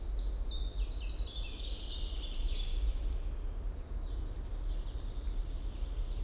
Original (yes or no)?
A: yes